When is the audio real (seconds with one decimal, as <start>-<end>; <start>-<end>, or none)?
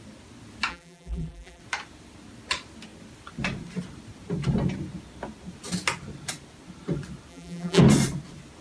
0.0-0.7; 1.6-7.3; 7.8-8.6